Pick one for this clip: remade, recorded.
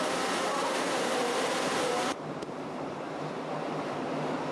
remade